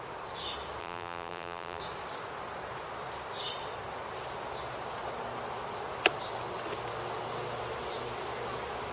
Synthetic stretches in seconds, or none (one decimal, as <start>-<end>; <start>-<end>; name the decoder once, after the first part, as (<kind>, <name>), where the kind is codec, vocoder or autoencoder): 0.8-1.8 (vocoder, BigVGAN v2)